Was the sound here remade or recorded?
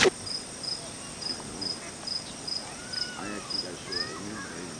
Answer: recorded